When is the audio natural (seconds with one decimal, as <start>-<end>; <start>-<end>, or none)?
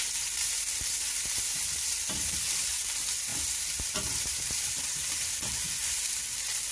0.0-3.3; 3.9-5.0; 6.2-6.7